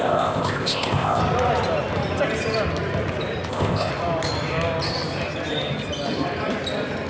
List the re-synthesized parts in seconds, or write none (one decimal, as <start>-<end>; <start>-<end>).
0.0-1.2; 3.5-3.9